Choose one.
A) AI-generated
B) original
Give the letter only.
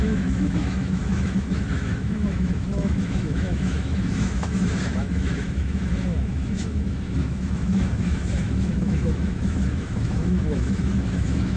A